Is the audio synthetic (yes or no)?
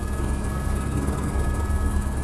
yes